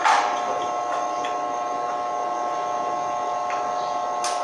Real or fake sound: real